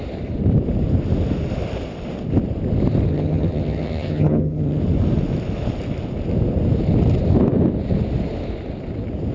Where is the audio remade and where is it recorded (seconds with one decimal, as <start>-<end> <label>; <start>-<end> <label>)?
0.0-3.1 recorded; 3.1-4.8 remade; 4.8-9.3 recorded